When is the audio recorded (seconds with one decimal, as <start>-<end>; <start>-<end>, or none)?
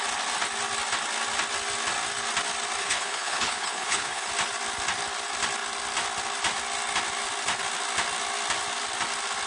0.0-2.8; 4.3-9.5